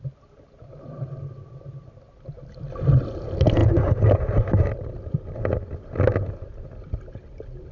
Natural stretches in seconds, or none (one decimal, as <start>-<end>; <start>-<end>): 0.0-7.7